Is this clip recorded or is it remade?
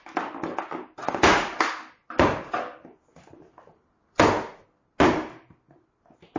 recorded